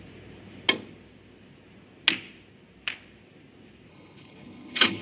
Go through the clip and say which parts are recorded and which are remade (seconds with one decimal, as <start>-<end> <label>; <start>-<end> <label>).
0.0-3.9 recorded; 3.9-5.0 remade